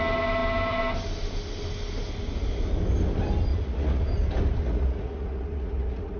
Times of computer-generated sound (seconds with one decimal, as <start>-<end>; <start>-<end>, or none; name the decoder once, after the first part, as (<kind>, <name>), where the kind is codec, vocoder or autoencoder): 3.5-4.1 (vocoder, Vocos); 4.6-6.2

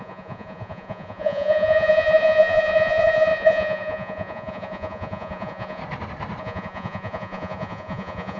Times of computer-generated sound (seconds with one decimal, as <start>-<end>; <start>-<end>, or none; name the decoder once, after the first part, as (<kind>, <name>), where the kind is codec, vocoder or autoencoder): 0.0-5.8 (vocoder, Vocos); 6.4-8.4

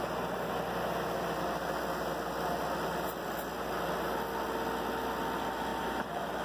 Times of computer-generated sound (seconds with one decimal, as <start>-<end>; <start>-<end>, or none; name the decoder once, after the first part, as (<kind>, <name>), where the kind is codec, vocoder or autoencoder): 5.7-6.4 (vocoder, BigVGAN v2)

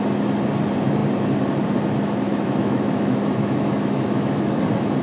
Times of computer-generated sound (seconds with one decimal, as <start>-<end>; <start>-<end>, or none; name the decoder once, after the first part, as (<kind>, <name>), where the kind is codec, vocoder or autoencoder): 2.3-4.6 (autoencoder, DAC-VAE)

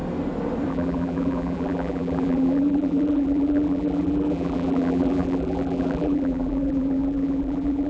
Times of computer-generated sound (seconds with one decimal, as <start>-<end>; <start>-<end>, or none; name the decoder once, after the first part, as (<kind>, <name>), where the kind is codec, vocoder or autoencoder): 0.7-7.9 (vocoder, BigVGAN v2)

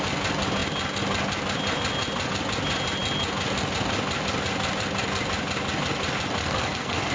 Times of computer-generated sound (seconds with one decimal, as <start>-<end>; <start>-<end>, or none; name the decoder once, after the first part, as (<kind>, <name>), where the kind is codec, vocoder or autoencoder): 6.4-7.1 (codec, SNAC)